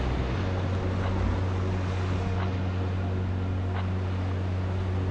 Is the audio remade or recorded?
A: recorded